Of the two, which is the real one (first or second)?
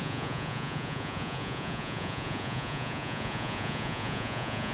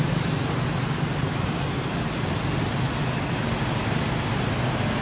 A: second